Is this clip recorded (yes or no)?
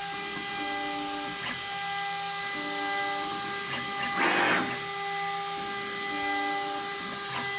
yes